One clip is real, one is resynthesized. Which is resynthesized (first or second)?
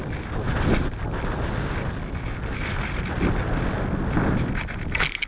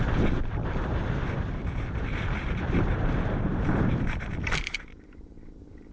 second